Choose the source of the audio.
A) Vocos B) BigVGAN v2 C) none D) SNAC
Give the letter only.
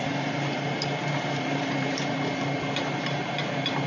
B